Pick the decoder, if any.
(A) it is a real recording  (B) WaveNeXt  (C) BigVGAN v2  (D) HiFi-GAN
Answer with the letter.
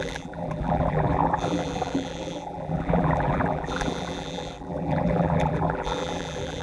C